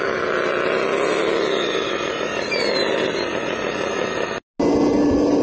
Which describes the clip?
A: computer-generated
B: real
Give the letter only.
B